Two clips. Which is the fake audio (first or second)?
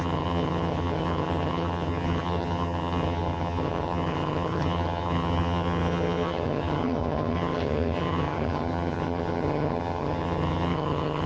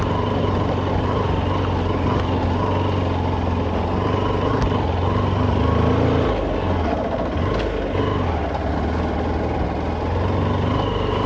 first